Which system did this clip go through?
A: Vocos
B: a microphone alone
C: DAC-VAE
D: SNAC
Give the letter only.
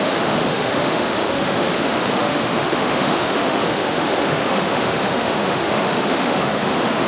C